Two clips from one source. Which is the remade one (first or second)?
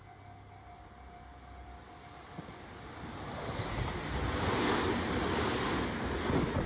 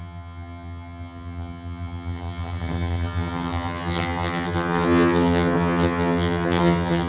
second